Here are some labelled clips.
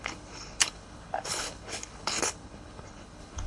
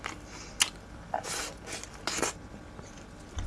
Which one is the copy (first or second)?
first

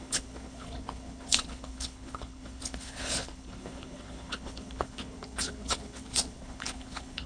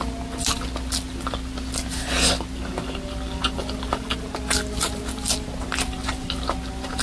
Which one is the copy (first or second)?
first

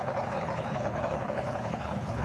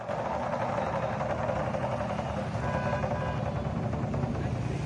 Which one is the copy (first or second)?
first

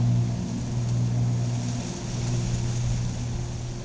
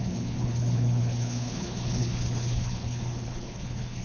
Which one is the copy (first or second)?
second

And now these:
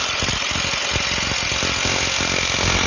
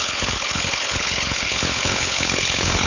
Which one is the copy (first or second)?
second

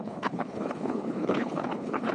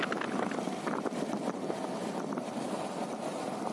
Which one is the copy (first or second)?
first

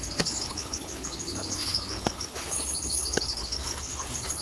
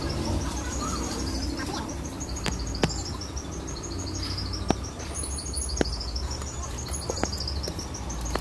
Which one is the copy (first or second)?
first